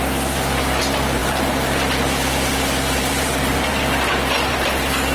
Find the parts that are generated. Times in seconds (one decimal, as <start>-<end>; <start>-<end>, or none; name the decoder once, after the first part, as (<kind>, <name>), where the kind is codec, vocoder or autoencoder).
0.0-3.7 (vocoder, BigVGAN v2); 4.5-5.1